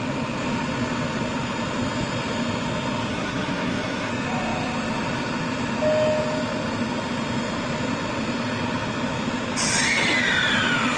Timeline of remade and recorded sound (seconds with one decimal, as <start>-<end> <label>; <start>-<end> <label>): 0.0-3.1 recorded; 3.1-4.1 remade; 4.1-11.0 recorded